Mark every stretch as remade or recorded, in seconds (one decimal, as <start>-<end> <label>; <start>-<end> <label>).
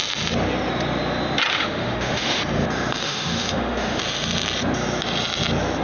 0.0-1.5 recorded; 1.5-2.4 remade; 2.4-3.0 recorded; 3.0-4.0 remade; 4.0-5.8 recorded